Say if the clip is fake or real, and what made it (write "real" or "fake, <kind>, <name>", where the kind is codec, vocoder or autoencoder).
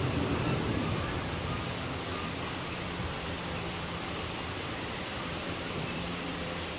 fake, vocoder, BigVGAN v2